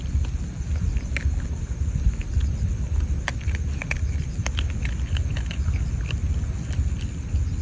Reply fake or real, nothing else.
real